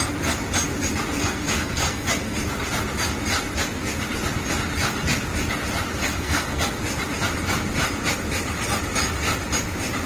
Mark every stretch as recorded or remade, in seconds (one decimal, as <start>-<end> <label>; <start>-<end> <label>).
0.0-1.2 recorded; 1.2-2.4 remade; 2.4-6.0 recorded; 6.0-6.7 remade; 6.7-10.1 recorded